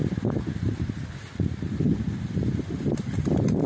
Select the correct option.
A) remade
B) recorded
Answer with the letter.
B